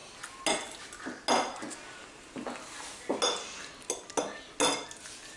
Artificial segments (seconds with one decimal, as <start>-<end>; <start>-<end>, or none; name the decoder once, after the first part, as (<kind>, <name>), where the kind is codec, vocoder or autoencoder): none